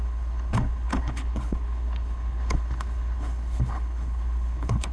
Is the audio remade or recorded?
remade